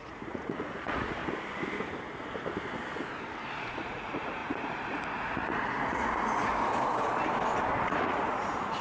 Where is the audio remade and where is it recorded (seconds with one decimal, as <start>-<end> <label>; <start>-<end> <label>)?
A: 0.0-1.2 remade; 1.2-3.6 recorded; 3.6-6.5 remade; 6.5-7.8 recorded; 7.8-8.8 remade